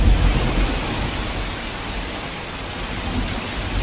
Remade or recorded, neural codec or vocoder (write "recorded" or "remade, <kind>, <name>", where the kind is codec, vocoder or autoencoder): recorded